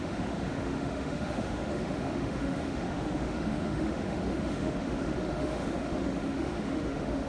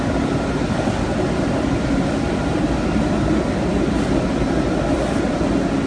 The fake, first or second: first